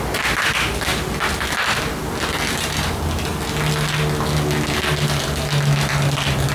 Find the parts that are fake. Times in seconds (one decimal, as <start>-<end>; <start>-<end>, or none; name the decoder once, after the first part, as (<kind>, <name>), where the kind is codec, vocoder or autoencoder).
none